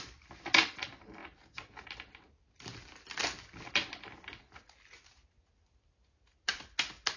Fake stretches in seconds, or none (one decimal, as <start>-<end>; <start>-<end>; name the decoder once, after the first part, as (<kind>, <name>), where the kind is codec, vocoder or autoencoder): none